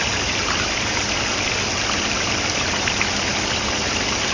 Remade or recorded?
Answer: recorded